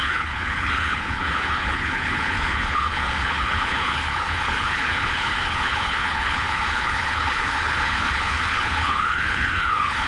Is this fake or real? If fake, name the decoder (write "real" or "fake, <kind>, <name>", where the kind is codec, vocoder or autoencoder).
fake, codec, HILCodec